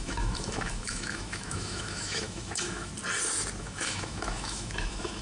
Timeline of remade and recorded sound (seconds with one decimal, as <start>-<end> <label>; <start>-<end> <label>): 0.0-2.9 remade; 2.9-3.6 recorded; 3.6-5.2 remade